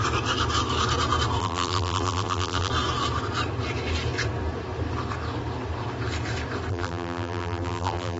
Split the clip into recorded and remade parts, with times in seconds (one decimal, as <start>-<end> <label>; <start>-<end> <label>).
0.0-1.4 recorded; 1.4-2.7 remade; 2.7-6.7 recorded; 6.7-8.2 remade